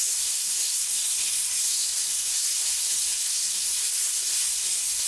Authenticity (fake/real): fake